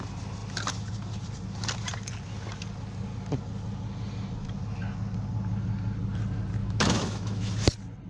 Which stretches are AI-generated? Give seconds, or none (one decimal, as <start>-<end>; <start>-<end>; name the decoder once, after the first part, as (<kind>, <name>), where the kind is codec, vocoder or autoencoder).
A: 6.6-7.5 (autoencoder, DAC-VAE)